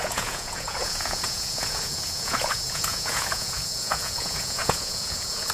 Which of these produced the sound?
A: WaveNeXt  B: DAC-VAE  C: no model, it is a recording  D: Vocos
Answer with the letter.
D